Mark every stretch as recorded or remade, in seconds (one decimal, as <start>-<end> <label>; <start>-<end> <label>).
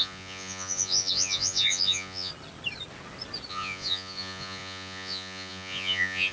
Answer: 0.0-2.3 remade; 2.3-3.5 recorded; 3.5-6.3 remade